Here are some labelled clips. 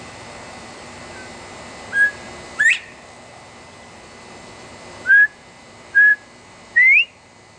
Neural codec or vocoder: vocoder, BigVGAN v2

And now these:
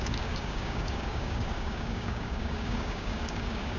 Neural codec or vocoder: codec, DAC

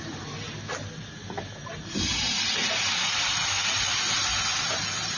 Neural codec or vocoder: none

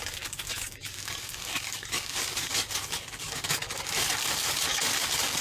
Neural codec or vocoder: codec, DAC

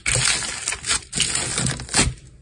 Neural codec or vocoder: none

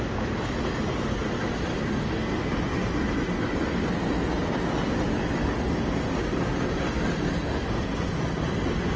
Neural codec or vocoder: none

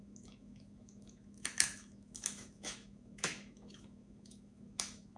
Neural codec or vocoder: autoencoder, DAC-VAE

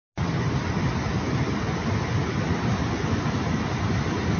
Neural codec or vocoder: none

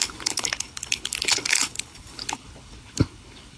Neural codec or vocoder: codec, HILCodec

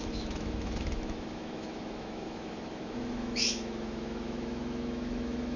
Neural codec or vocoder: autoencoder, DAC-VAE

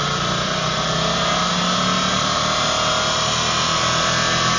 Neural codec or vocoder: none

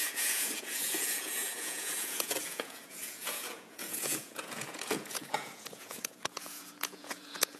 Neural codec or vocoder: vocoder, Vocos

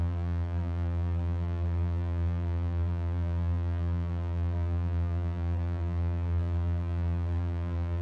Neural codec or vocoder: vocoder, BigVGAN v2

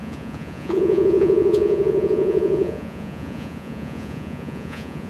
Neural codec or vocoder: vocoder, Vocos